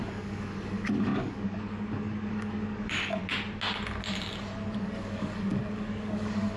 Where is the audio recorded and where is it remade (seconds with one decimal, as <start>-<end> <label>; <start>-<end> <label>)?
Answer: 0.0-3.2 remade; 3.2-4.8 recorded; 4.8-6.6 remade

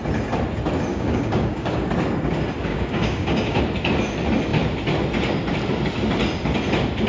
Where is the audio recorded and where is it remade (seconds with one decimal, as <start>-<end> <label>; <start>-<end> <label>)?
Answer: 0.0-0.9 recorded; 0.9-1.9 remade; 1.9-2.7 recorded; 2.7-3.6 remade; 3.6-7.1 recorded

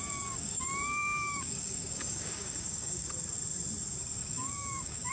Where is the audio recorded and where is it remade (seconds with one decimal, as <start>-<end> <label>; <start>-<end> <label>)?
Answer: 0.0-3.1 remade; 3.1-4.2 recorded; 4.2-5.1 remade

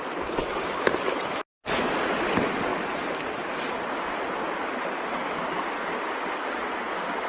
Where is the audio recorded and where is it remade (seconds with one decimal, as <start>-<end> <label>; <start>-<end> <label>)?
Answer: 0.0-0.4 recorded; 0.4-0.9 remade; 0.9-7.3 recorded

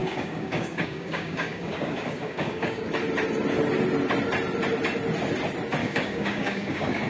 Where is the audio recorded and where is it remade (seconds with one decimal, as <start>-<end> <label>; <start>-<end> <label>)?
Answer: 0.0-2.9 remade; 2.9-5.8 recorded; 5.8-7.1 remade

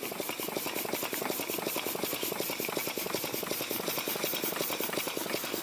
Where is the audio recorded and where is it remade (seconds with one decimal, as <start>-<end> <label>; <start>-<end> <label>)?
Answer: 0.0-5.6 recorded

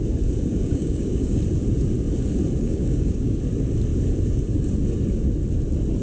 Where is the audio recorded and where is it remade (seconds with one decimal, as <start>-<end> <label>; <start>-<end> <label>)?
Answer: 0.0-0.5 recorded; 0.5-1.4 remade; 1.4-2.6 recorded; 2.6-3.4 remade; 3.4-6.0 recorded

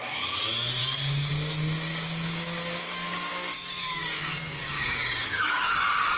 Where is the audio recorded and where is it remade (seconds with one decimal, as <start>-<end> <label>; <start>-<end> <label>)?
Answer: 0.0-0.8 recorded; 0.8-1.3 remade; 1.3-1.9 recorded; 1.9-5.6 remade; 5.6-6.2 recorded